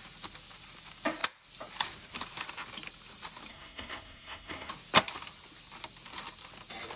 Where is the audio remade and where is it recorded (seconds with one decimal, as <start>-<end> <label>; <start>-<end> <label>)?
0.0-3.5 recorded; 3.5-4.7 remade; 4.7-7.0 recorded